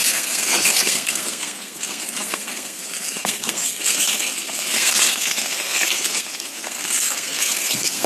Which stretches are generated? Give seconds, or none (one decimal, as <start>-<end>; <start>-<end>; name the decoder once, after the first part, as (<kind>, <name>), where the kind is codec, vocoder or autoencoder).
0.0-8.1 (codec, SNAC)